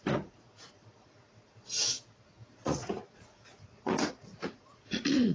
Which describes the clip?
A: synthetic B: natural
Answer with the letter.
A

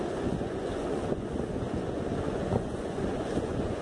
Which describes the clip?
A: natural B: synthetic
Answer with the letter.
B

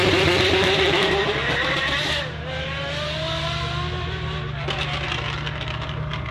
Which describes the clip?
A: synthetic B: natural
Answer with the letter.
B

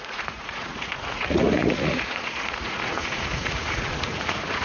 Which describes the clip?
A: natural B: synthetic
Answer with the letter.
B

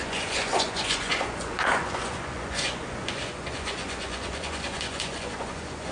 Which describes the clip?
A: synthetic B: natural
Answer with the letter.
A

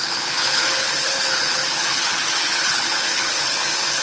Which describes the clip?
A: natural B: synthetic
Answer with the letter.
B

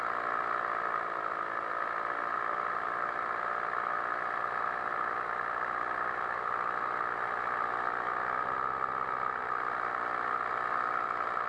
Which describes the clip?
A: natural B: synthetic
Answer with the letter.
B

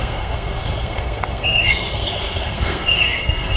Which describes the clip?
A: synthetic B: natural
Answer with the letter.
A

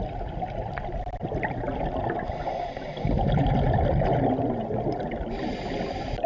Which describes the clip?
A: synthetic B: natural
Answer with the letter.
B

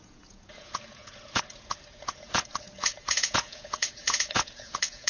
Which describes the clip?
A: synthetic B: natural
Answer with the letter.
A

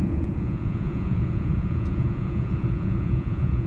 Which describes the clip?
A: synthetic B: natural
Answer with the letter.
A